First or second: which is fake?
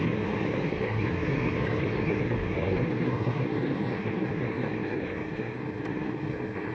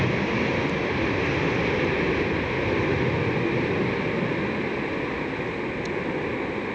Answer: first